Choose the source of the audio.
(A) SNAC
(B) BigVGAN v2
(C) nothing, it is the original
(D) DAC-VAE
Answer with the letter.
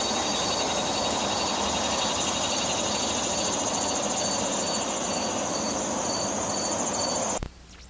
C